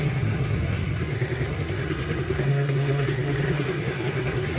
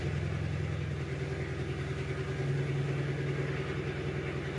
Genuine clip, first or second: second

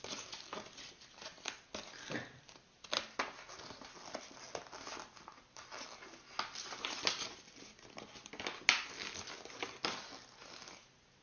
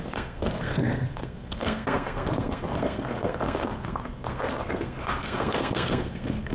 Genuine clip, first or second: first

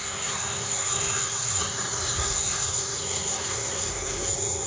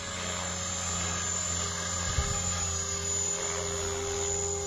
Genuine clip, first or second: second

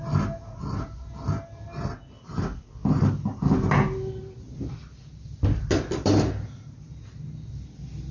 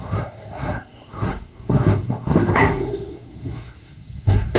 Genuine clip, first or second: first